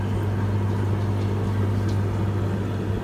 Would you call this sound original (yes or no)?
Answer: yes